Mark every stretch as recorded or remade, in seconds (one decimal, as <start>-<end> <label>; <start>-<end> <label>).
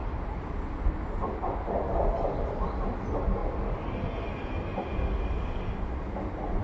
0.0-6.6 recorded